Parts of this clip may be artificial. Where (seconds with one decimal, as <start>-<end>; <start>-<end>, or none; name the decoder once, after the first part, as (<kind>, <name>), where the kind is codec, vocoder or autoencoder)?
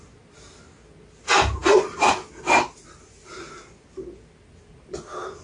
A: none